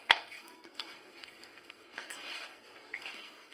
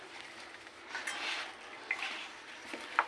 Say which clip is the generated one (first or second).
first